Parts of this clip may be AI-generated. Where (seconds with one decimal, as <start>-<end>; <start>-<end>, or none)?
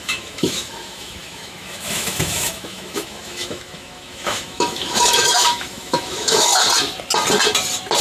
0.0-6.5